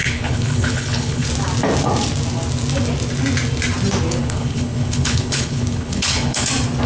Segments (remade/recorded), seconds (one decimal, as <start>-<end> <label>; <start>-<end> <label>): 0.0-1.3 remade; 1.3-4.2 recorded; 4.2-6.5 remade; 6.5-6.9 recorded

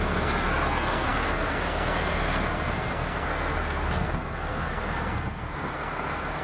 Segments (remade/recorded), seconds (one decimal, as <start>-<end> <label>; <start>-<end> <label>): 0.0-6.4 remade

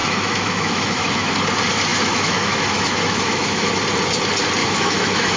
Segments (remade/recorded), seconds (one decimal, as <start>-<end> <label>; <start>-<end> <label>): 0.0-1.3 remade; 1.3-1.9 recorded; 1.9-3.7 remade; 3.7-4.6 recorded; 4.6-5.4 remade

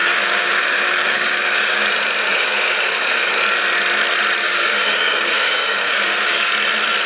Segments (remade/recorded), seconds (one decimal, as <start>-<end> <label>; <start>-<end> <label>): 0.0-1.8 remade; 1.8-2.3 recorded; 2.3-3.3 remade; 3.3-4.4 recorded; 4.4-6.5 remade; 6.5-7.1 recorded

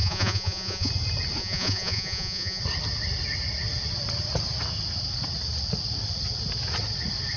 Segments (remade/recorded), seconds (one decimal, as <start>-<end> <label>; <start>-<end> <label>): 0.0-0.9 remade; 0.9-1.4 recorded; 1.4-2.6 remade; 2.6-7.4 recorded

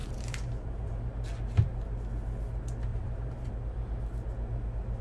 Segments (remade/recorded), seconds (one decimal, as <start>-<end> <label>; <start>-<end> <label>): 0.0-1.1 remade; 1.1-2.9 recorded; 2.9-3.5 remade; 3.5-5.0 recorded

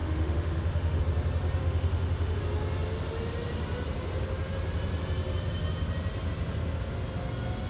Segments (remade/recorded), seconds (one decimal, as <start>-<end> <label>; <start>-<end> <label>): 0.0-1.0 remade; 1.0-1.6 recorded; 1.6-2.4 remade; 2.4-7.7 recorded